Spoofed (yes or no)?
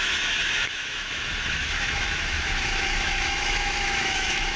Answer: yes